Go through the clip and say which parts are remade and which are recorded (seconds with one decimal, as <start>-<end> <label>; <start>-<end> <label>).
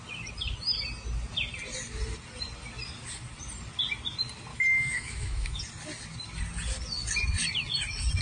0.0-4.5 recorded; 4.5-5.6 remade; 5.6-8.2 recorded